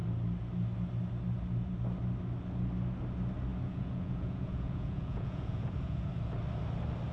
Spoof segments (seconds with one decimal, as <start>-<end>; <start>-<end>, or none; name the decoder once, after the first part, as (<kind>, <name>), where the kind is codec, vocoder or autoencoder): 3.5-6.1 (vocoder, Vocos)